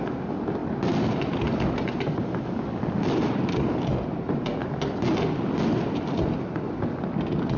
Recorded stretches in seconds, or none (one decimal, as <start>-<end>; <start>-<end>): 0.0-7.6